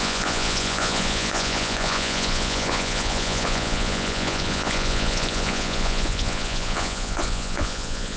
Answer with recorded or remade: remade